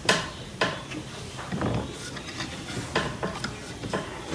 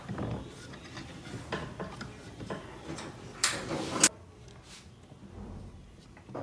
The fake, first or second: first